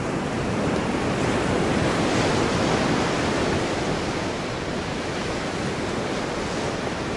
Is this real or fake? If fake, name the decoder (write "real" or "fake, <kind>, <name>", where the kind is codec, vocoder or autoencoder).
real